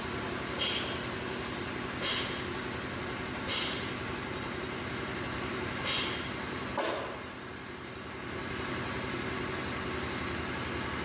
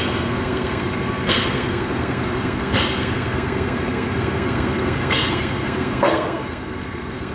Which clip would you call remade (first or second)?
second